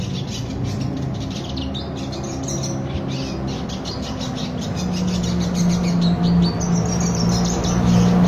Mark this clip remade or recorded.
recorded